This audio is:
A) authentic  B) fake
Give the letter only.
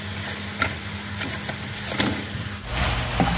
A